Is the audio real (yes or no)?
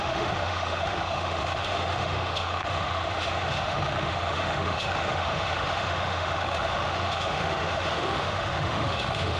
no